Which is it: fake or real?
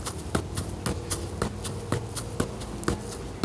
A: real